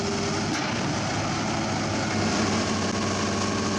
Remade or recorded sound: recorded